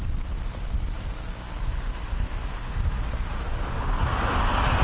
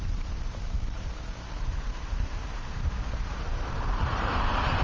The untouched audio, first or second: first